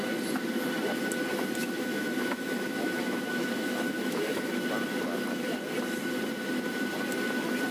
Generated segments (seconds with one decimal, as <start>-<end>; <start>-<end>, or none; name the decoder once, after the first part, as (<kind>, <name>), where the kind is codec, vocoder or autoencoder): 1.6-4.5 (autoencoder, DAC-VAE)